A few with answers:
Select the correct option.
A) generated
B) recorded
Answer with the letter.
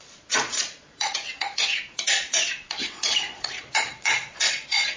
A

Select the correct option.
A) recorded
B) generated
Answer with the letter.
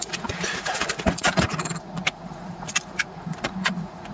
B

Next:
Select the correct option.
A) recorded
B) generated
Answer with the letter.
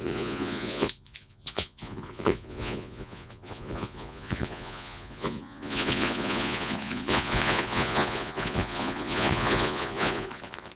B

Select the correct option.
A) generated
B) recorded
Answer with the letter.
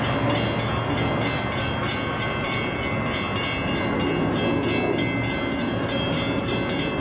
B